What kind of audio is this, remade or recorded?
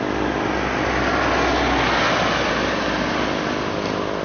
recorded